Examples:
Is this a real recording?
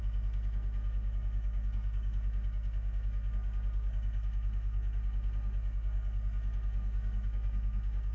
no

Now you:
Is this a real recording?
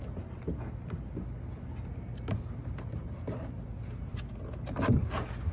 yes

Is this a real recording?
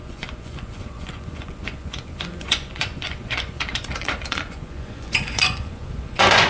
no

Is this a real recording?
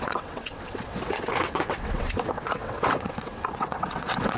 no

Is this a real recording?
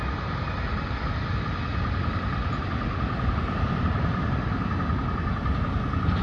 yes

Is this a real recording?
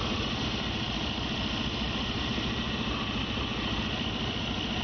yes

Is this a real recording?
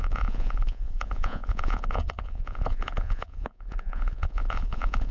no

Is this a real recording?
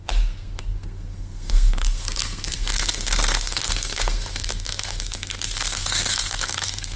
no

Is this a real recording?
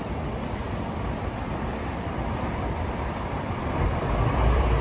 no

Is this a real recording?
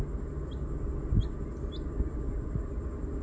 yes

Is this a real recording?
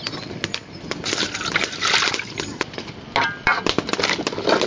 yes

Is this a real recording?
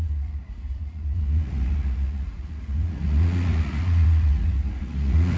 no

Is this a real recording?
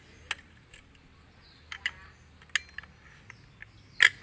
yes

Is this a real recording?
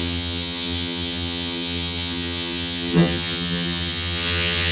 no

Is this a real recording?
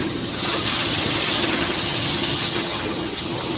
no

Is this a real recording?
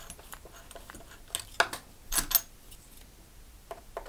yes